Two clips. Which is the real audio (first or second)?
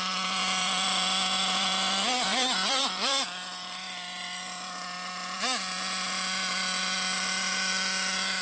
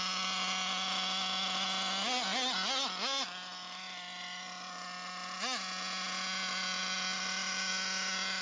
second